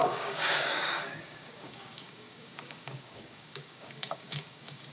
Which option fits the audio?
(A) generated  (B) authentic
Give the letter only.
A